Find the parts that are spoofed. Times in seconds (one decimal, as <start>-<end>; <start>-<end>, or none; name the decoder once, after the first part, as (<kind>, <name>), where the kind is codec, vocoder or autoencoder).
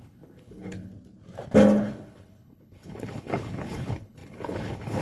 0.0-0.9 (codec, HILCodec); 1.8-5.0